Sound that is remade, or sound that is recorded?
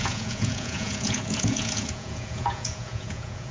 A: remade